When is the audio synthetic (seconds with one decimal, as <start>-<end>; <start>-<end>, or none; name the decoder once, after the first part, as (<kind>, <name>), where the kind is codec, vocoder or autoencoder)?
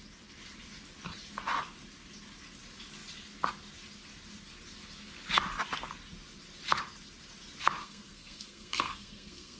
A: 7.8-9.6 (codec, SNAC)